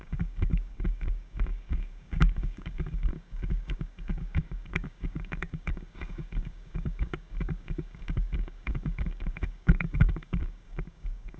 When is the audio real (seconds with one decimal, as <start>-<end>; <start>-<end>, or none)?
none